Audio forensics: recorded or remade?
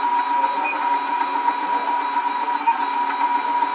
recorded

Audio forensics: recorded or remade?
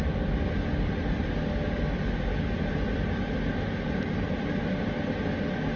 recorded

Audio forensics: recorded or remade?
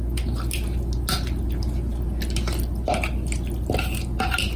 recorded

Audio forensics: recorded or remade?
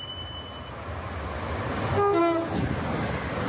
recorded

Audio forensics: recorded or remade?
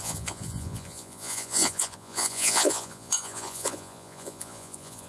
remade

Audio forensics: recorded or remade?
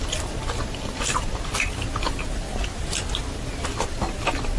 recorded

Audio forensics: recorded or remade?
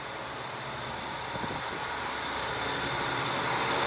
recorded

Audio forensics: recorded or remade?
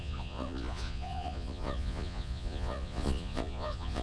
remade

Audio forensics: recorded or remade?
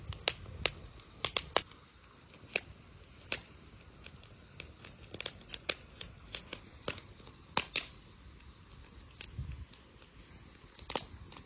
recorded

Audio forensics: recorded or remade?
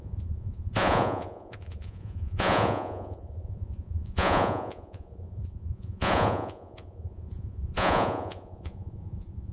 remade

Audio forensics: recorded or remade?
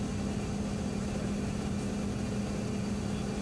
recorded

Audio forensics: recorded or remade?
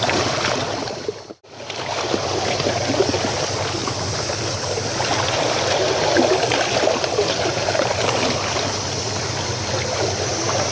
recorded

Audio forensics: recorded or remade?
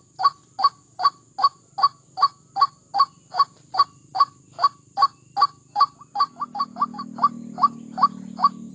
recorded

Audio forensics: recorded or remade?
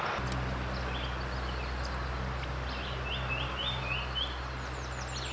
recorded